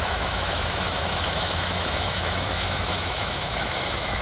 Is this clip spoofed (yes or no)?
yes